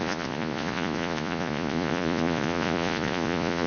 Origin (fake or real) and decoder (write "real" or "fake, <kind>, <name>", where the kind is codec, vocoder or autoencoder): fake, vocoder, Vocos